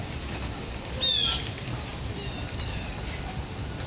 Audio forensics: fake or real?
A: real